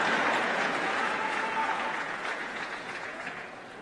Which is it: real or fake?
fake